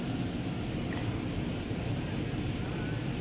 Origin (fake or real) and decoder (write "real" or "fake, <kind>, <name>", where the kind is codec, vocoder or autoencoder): real